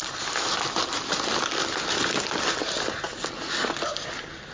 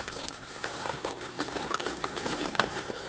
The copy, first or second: second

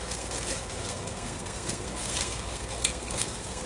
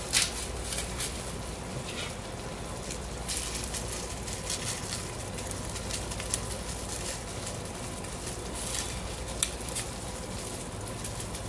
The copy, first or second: first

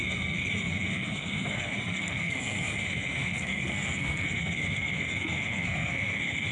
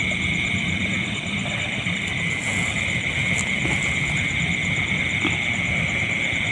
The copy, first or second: first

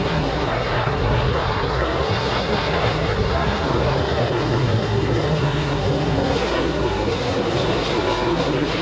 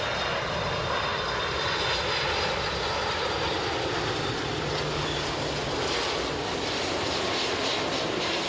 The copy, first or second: first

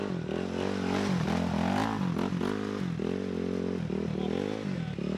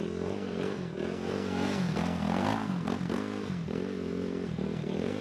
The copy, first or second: second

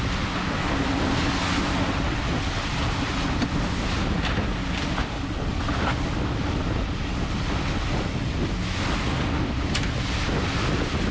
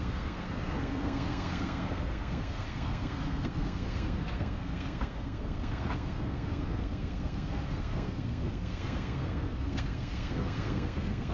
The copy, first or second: second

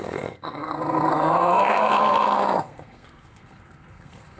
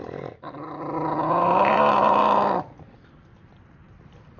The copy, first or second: first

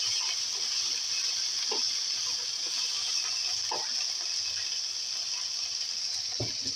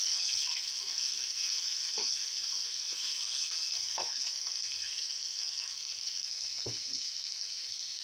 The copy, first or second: second